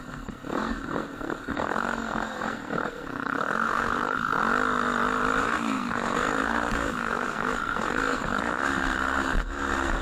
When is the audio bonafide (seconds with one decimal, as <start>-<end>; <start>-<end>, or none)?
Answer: 4.3-5.4